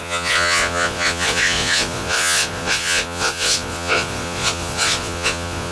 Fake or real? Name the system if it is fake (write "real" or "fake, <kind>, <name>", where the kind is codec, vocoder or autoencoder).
fake, vocoder, Vocos